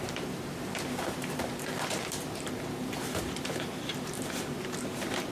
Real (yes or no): no